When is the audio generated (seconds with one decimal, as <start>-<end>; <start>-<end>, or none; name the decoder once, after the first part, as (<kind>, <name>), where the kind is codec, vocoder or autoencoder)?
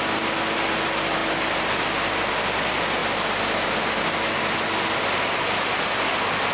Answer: none